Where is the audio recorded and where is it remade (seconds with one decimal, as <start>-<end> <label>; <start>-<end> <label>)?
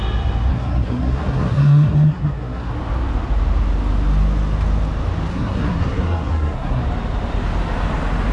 0.0-0.5 recorded; 0.5-2.7 remade; 2.7-5.3 recorded; 5.3-6.8 remade; 6.8-8.3 recorded